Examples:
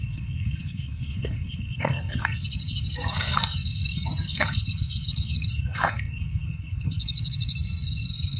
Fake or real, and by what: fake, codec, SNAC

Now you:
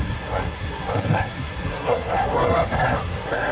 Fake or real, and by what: fake, codec, SNAC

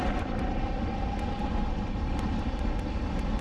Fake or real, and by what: real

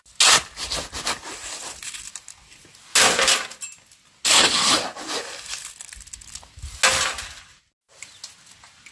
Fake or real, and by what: real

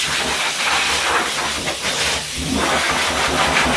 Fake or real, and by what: real